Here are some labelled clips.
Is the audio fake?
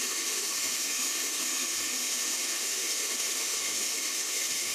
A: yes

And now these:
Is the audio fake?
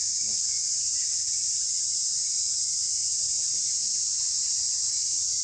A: no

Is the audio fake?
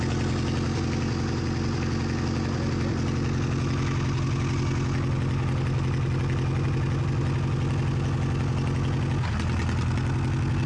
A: no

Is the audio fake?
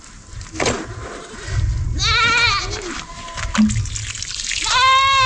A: no